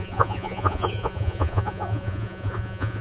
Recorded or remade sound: remade